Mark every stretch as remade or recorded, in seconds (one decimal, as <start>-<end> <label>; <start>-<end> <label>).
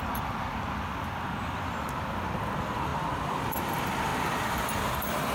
0.0-2.9 remade; 2.9-3.5 recorded; 3.5-5.3 remade